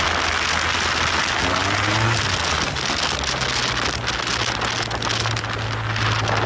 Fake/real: real